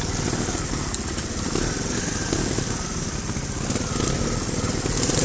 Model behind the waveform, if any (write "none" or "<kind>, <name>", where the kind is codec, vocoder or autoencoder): none